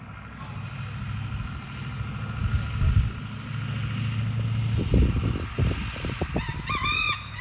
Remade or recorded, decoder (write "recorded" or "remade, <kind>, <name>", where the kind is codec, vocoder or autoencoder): recorded